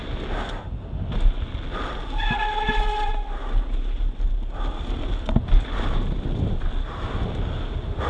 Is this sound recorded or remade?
recorded